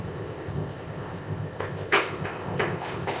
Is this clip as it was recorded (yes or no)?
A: no